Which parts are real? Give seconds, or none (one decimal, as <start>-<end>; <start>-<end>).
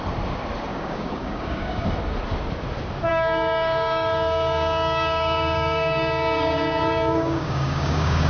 0.0-0.7; 1.9-3.1